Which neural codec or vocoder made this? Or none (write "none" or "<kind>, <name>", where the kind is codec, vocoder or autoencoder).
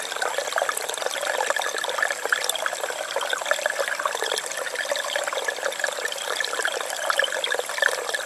none